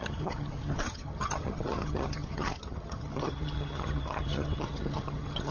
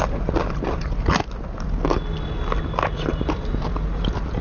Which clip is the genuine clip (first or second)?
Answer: second